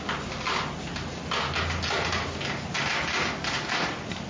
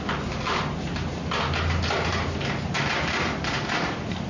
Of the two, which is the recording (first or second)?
first